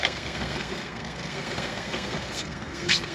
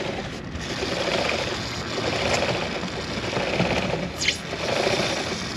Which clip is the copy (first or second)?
first